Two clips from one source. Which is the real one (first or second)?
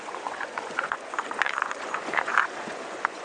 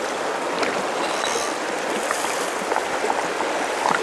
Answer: second